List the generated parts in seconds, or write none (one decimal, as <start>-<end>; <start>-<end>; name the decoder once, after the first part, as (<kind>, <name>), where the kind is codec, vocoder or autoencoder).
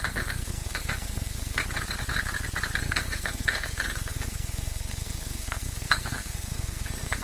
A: 0.0-1.6 (codec, SNAC); 2.8-7.2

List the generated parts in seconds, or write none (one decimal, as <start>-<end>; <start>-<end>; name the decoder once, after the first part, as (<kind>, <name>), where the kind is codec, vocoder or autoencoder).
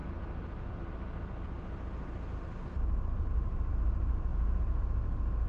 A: 4.3-4.8 (vocoder, Vocos)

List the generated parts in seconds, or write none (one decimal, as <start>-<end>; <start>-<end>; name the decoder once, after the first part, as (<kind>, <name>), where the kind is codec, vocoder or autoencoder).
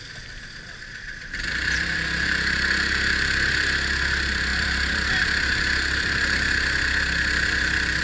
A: 0.0-8.0 (vocoder, BigVGAN v2)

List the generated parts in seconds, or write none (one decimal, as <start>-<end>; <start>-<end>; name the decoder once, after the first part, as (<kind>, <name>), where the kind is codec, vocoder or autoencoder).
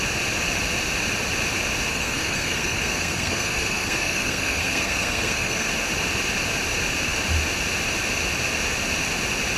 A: 1.9-5.7 (codec, SNAC)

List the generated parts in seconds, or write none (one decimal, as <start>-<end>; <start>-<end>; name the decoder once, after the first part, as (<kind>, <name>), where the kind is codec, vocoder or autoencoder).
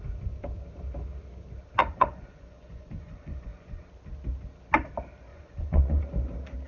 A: 1.8-3.8 (vocoder, Vocos); 5.3-6.0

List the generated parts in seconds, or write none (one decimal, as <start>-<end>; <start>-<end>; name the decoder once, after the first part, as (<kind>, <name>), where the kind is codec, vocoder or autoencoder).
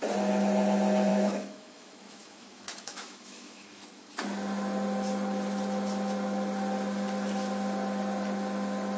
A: 1.1-4.1 (autoencoder, DAC-VAE)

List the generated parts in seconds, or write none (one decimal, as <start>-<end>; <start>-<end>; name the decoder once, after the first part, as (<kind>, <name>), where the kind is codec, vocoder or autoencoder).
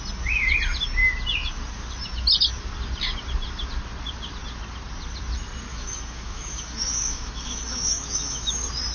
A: 5.7-8.5 (autoencoder, DAC-VAE)